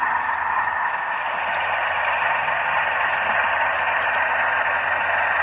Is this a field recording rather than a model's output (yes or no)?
yes